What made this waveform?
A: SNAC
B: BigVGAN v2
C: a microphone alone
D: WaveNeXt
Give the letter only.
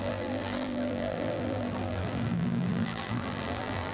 B